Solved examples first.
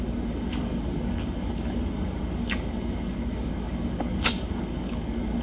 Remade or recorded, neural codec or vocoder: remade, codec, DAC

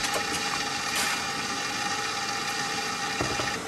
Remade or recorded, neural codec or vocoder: recorded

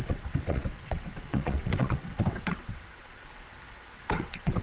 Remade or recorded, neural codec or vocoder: remade, vocoder, WaveNeXt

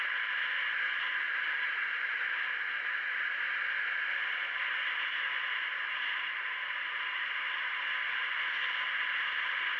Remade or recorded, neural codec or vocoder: remade, vocoder, BigVGAN v2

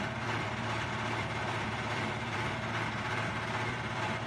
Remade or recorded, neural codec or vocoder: remade, vocoder, BigVGAN v2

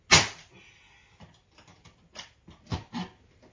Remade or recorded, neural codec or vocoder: recorded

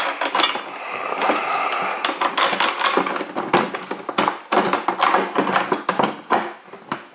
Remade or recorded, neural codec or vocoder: recorded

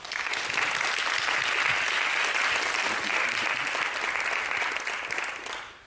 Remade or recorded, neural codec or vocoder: recorded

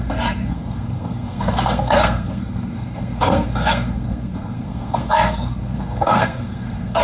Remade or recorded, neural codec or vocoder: remade, codec, SNAC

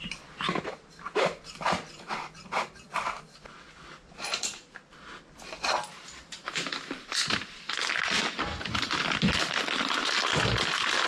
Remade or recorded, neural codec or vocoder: recorded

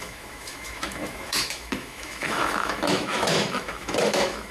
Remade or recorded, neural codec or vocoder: remade, autoencoder, DAC-VAE